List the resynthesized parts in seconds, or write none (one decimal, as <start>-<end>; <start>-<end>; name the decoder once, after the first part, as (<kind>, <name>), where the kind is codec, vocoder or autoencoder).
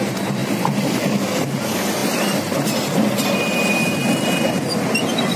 none